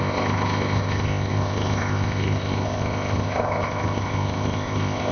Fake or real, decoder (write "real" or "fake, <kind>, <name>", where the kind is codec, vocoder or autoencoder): fake, codec, ZipCodec